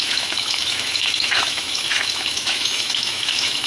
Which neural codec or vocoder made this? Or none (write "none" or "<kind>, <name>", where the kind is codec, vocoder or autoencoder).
autoencoder, DAC-VAE